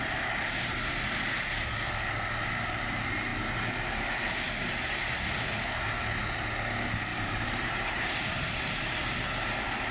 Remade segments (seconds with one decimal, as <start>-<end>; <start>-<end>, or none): 7.1-8.5